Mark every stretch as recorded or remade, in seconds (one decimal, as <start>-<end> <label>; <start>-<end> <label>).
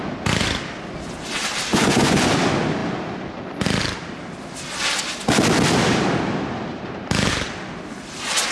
0.0-1.7 recorded; 1.7-2.3 remade; 2.3-8.5 recorded